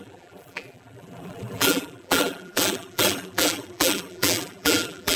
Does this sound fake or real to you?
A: fake